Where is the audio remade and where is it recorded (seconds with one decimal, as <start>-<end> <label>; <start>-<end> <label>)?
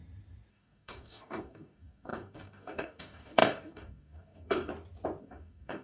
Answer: 0.0-0.5 recorded; 0.5-4.7 remade; 4.7-5.2 recorded; 5.2-5.8 remade